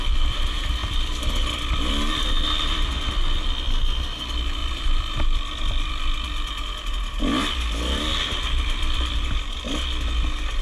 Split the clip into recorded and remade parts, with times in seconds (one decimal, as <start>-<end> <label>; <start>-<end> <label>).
0.0-0.8 recorded; 0.8-2.9 remade; 2.9-4.6 recorded; 4.6-5.9 remade; 5.9-8.1 recorded; 8.1-9.5 remade; 9.5-10.6 recorded